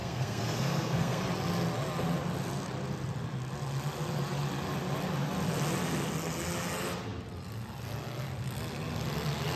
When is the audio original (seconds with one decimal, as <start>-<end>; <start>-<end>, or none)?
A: 1.2-9.6